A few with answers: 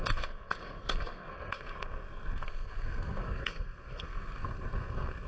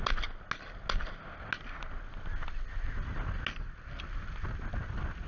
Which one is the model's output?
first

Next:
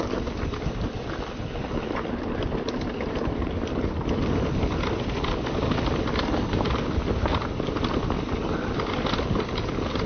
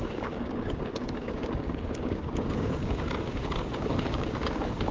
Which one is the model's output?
second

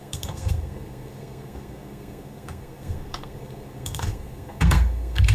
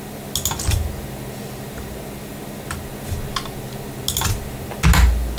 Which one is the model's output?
first